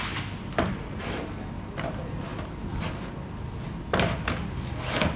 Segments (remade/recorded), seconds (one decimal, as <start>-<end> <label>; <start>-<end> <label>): 0.0-5.2 recorded